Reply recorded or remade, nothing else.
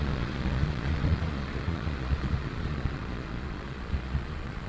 remade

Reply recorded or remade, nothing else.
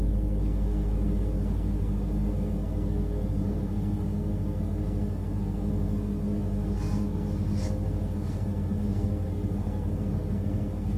remade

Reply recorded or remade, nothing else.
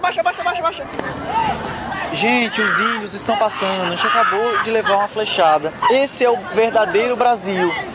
recorded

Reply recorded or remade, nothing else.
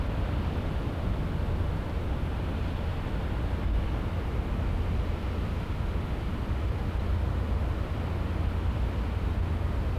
recorded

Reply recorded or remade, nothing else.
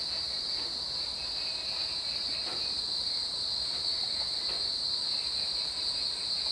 recorded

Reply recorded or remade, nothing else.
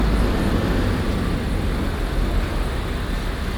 recorded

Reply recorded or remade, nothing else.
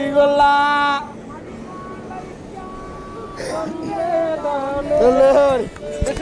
recorded